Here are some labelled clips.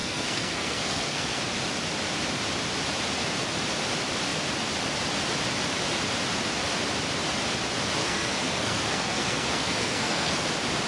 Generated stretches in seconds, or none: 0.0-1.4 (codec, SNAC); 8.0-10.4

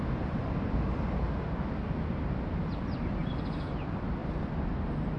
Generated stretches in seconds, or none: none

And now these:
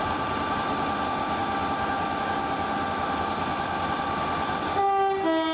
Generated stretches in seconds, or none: none

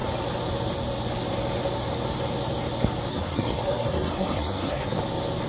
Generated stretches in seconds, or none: 3.1-5.0 (codec, SNAC)